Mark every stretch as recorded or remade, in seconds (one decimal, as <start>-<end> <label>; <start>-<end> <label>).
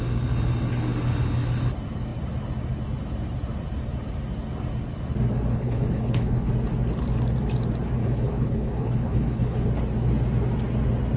0.0-5.5 recorded; 5.5-6.5 remade; 6.5-8.0 recorded; 8.0-9.7 remade; 9.7-11.2 recorded